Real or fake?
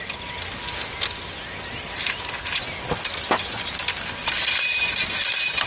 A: real